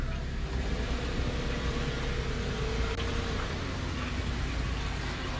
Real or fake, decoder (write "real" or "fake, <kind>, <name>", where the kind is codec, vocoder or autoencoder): real